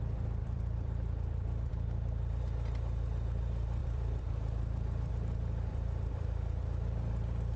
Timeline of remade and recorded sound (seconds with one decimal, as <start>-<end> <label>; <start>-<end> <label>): 0.0-0.4 recorded; 0.4-2.4 remade; 2.4-3.8 recorded; 3.8-5.1 remade; 5.1-5.7 recorded; 5.7-6.6 remade; 6.6-7.6 recorded